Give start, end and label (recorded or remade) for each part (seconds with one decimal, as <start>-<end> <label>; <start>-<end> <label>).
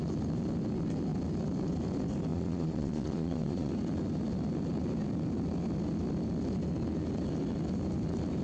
0.0-2.3 recorded; 2.3-3.7 remade; 3.7-8.4 recorded